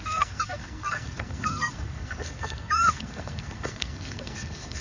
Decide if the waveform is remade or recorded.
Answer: remade